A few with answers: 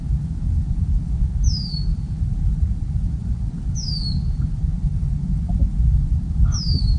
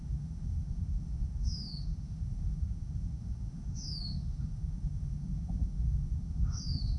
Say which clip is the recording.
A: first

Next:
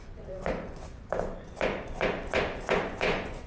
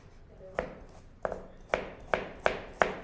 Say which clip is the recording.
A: second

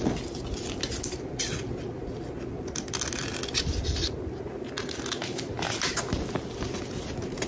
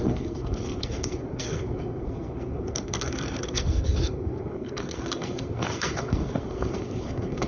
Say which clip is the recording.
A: first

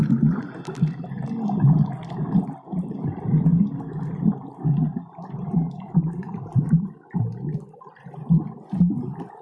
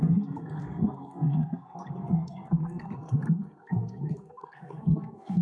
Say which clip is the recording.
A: first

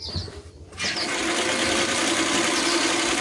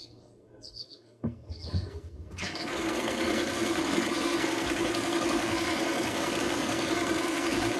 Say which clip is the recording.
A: first